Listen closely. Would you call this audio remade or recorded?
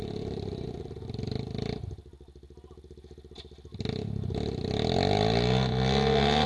recorded